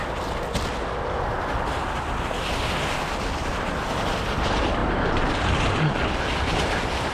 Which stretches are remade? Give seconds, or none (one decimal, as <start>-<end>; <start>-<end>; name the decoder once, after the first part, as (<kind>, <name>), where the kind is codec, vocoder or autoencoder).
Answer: 4.8-6.2 (vocoder, BigVGAN v2)